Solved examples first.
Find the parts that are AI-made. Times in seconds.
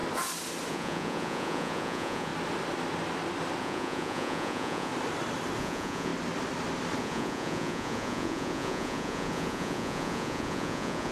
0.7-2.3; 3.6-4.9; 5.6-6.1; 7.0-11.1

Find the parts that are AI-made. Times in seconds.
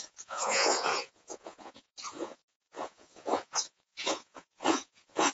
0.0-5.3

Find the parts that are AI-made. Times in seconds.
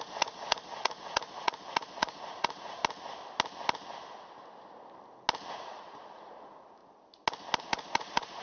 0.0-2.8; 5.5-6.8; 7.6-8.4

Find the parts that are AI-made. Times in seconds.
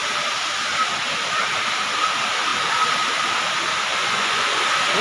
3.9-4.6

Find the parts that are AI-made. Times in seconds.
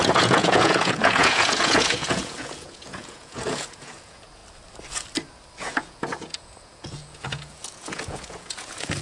0.0-4.4; 5.6-9.0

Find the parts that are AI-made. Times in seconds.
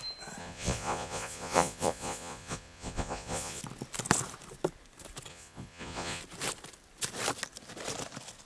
0.4-3.6; 5.3-6.2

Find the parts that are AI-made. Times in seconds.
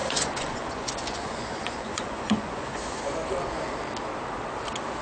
0.0-3.0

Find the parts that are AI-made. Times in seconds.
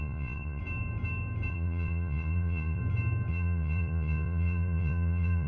0.0-0.6; 1.5-2.8; 3.3-5.5